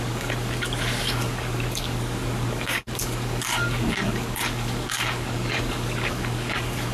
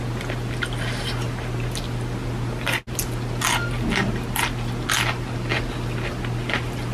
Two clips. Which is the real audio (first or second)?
second